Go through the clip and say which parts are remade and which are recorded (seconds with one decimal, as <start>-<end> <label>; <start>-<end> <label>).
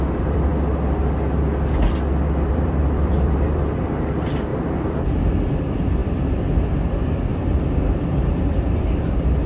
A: 0.0-0.5 remade; 0.5-2.5 recorded; 2.5-4.5 remade; 4.5-5.6 recorded; 5.6-7.3 remade; 7.3-8.3 recorded; 8.3-9.5 remade